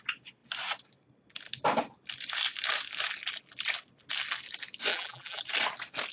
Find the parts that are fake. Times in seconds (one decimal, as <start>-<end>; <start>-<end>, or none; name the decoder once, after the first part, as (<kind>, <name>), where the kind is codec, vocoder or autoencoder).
4.9-5.4 (vocoder, BigVGAN v2)